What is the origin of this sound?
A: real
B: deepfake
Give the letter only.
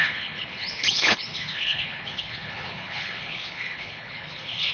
B